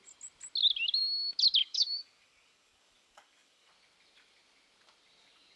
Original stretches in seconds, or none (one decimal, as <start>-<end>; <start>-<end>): 0.0-1.6; 3.7-5.6